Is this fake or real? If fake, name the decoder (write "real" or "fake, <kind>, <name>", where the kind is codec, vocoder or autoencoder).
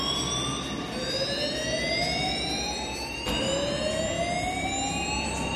real